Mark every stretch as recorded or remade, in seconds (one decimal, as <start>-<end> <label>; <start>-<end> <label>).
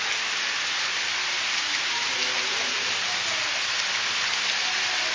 0.0-1.2 recorded; 1.2-2.1 remade; 2.1-5.1 recorded